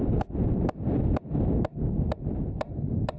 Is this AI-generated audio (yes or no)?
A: yes